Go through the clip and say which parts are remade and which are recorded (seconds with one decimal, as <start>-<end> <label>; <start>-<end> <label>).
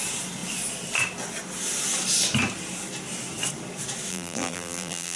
0.0-4.1 recorded; 4.1-5.2 remade